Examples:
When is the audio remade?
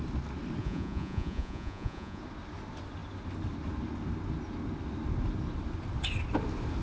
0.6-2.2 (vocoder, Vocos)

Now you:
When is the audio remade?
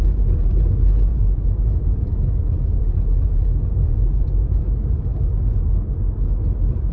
1.1-4.6 (vocoder, Vocos)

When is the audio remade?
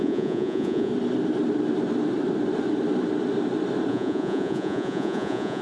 0.0-0.9 (vocoder, Vocos); 3.9-5.6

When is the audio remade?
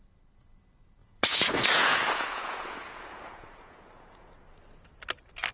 1.0-4.3 (vocoder, Vocos)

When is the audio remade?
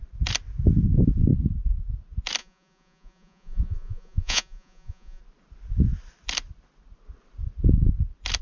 2.4-5.2 (vocoder, Vocos)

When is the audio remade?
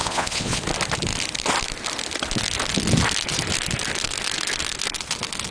0.0-0.6 (vocoder, Vocos)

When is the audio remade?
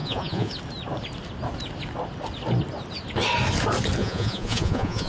0.0-0.5 (vocoder, Vocos); 4.0-5.1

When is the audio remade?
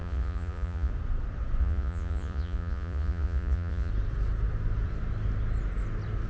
0.0-0.9 (vocoder, Vocos); 1.6-3.9